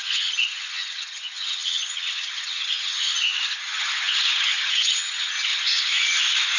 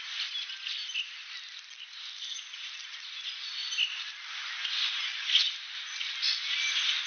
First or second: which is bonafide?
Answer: second